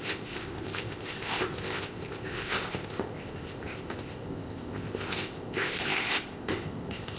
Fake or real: fake